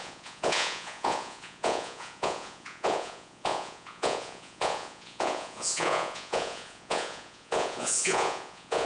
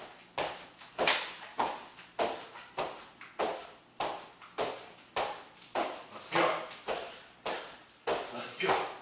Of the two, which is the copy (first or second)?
first